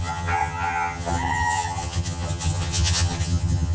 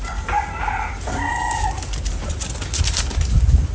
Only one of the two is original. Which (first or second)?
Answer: second